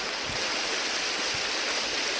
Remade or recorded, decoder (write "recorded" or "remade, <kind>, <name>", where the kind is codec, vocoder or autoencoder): recorded